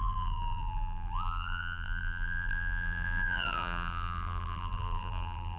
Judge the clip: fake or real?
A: fake